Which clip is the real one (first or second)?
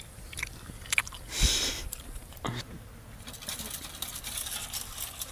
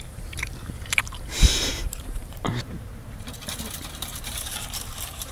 first